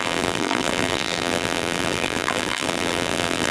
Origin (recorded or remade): remade